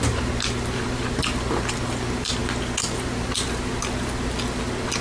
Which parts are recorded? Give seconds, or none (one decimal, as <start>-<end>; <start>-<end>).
0.0-5.0